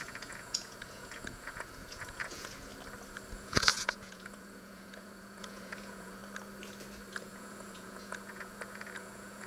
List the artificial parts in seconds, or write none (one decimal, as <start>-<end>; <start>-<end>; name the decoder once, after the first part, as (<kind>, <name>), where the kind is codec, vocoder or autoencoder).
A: 0.0-2.7 (vocoder, Vocos); 3.3-6.2; 7.1-9.5